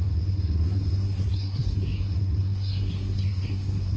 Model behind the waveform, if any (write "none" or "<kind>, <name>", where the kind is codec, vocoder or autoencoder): codec, SNAC